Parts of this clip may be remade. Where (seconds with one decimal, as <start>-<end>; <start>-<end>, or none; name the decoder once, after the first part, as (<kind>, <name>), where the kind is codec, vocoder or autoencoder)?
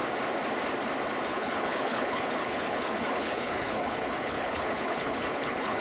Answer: 1.3-5.8 (codec, HILCodec)